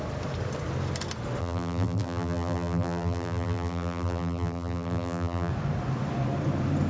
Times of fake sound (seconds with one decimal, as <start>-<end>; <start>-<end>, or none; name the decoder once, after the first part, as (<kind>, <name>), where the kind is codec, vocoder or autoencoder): 1.4-5.5 (vocoder, BigVGAN v2)